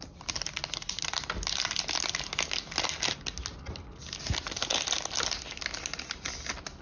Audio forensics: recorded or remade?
recorded